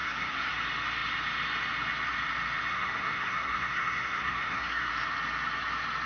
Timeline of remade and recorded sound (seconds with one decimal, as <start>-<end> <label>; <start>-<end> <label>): 0.0-0.5 remade; 0.5-2.7 recorded; 2.7-4.9 remade; 4.9-6.1 recorded